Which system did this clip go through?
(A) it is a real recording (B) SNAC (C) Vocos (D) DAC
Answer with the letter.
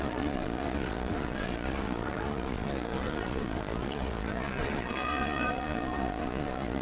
C